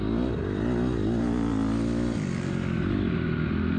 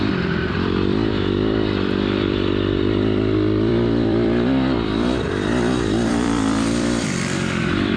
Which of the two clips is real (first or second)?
first